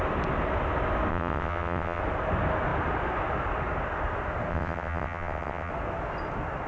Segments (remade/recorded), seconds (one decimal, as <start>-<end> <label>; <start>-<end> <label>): 0.0-1.1 recorded; 1.1-2.0 remade; 2.0-4.5 recorded; 4.5-5.7 remade; 5.7-6.7 recorded